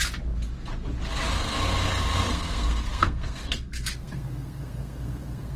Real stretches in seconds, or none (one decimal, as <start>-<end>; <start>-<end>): 0.0-2.3